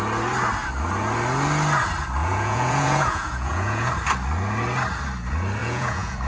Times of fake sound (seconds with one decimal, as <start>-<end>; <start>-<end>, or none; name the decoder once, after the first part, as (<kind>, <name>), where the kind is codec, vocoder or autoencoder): 2.2-3.9 (vocoder, Vocos); 5.6-6.3